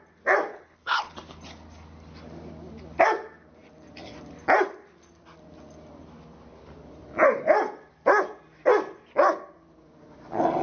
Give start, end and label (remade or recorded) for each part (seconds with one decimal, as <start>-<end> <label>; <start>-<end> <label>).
0.0-0.5 recorded; 0.5-1.1 remade; 1.1-10.6 recorded